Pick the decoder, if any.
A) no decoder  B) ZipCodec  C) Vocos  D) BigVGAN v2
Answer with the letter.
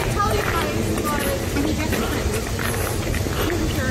A